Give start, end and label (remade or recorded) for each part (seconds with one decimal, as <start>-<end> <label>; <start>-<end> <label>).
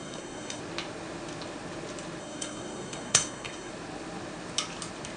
0.0-0.6 remade; 0.6-2.2 recorded; 2.2-3.7 remade; 3.7-5.2 recorded